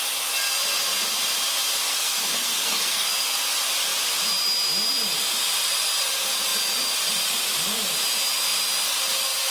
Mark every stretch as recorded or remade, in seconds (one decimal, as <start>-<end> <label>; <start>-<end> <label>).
0.0-1.9 recorded; 1.9-3.5 remade; 3.5-9.5 recorded